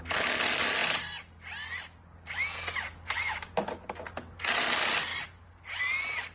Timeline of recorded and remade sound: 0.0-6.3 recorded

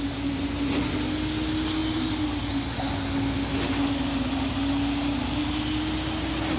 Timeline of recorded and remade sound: 0.0-6.6 recorded

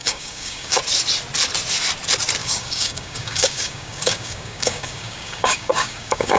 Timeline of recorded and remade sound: 0.0-0.8 remade; 0.8-2.4 recorded; 2.4-6.4 remade

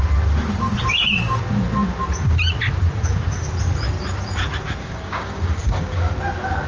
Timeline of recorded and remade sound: 0.0-4.8 recorded; 4.8-6.1 remade; 6.1-6.7 recorded

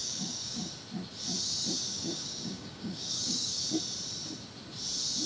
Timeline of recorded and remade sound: 0.0-0.7 remade; 0.7-1.9 recorded; 1.9-3.6 remade; 3.6-5.3 recorded